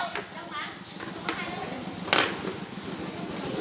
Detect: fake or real real